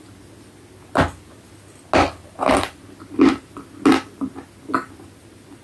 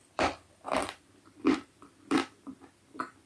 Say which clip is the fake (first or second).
second